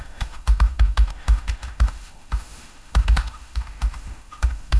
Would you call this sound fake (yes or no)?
yes